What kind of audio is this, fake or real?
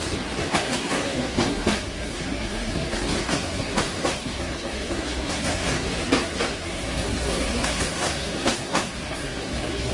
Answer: fake